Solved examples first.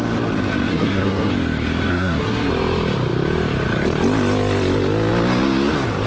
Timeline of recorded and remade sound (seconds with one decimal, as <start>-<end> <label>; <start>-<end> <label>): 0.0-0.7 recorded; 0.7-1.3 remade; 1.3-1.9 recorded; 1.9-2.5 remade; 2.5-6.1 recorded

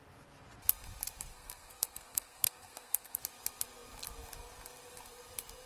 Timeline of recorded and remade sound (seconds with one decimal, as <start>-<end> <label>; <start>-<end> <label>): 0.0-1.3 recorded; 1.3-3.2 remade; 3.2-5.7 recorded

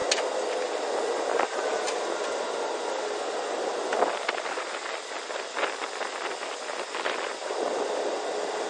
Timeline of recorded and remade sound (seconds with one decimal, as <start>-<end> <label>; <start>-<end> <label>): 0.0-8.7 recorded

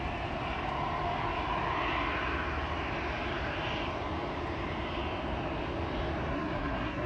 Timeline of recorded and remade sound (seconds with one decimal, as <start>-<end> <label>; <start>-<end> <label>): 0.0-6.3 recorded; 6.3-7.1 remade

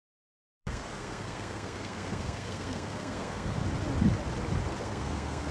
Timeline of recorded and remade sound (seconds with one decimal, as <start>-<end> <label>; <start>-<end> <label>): 0.0-3.6 remade; 3.6-4.8 recorded; 4.8-5.5 remade

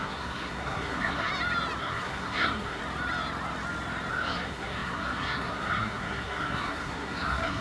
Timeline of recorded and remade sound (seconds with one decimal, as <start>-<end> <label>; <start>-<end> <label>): 0.0-1.3 remade; 1.3-1.8 recorded; 1.8-2.8 remade; 2.8-4.1 recorded; 4.1-7.6 remade